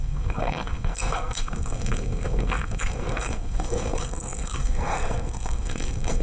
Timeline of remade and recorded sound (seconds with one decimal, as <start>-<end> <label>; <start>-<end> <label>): 0.0-6.2 remade